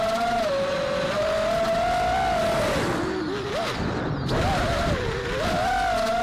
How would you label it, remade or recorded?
recorded